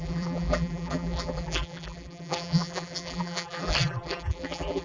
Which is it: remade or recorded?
remade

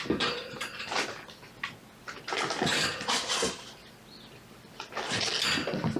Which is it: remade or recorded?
recorded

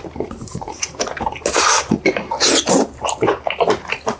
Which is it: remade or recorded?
remade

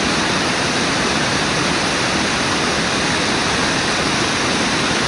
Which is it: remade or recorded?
remade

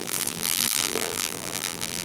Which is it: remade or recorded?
remade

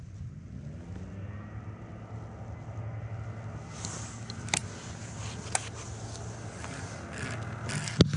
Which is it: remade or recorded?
recorded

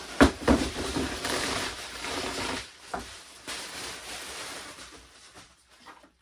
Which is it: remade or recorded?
remade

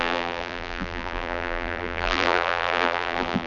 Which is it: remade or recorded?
remade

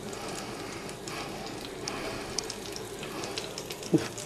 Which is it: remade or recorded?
recorded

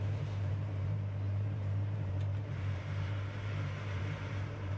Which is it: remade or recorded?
remade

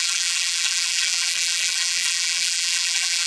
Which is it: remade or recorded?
remade